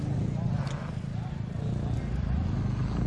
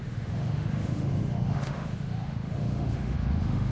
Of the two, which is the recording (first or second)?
first